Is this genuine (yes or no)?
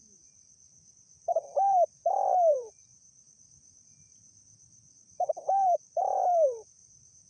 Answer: no